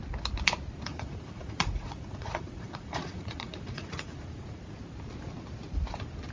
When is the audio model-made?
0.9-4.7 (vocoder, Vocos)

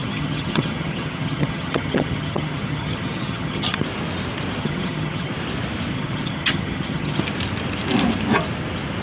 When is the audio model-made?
0.0-3.8 (vocoder, HiFi-GAN); 4.6-5.3; 5.9-7.2